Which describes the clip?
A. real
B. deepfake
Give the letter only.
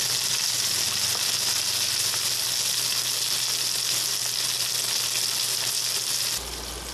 A